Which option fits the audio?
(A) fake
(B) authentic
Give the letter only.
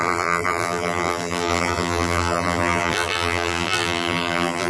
A